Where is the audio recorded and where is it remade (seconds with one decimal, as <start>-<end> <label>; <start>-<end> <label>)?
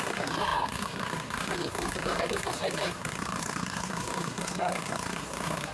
0.0-5.7 remade